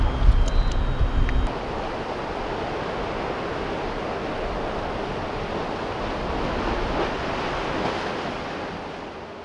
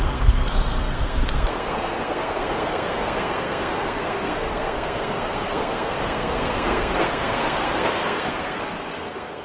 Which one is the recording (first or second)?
first